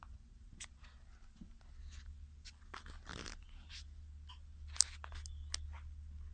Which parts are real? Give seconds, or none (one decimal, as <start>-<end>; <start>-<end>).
0.0-6.3